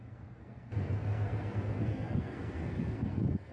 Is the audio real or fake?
fake